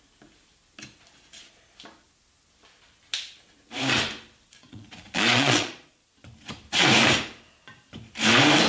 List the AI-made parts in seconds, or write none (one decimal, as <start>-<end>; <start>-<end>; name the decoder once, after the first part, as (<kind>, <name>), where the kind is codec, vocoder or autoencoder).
4.6-6.1 (vocoder, Vocos)